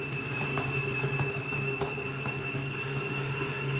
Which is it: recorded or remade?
remade